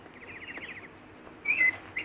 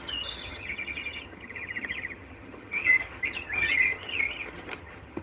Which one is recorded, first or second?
first